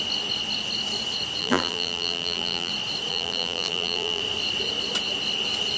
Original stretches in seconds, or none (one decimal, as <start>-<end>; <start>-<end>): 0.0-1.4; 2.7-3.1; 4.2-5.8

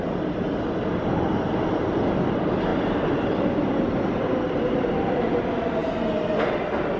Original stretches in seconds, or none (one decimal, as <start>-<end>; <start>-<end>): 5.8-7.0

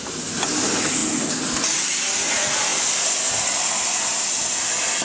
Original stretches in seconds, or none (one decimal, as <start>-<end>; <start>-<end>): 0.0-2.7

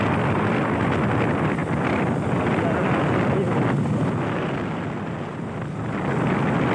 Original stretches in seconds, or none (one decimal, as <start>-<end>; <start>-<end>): 0.0-6.7